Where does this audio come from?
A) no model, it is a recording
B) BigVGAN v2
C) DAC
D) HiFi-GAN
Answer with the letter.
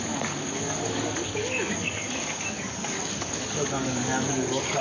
C